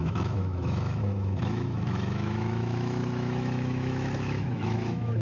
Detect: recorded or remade remade